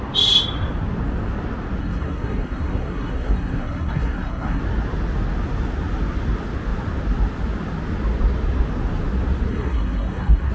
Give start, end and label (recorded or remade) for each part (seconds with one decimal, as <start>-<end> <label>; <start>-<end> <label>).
0.0-1.8 recorded; 1.8-4.6 remade; 4.6-9.5 recorded; 9.5-10.5 remade